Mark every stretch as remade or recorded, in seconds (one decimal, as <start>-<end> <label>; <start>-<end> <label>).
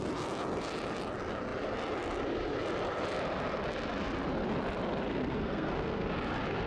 0.0-5.1 recorded; 5.1-6.1 remade; 6.1-6.7 recorded